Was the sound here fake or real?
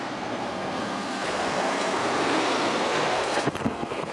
fake